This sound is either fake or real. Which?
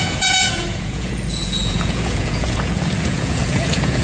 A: fake